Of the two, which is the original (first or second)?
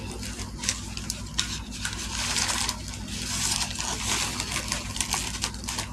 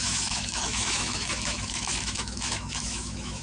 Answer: first